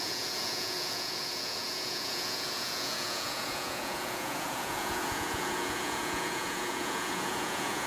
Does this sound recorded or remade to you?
remade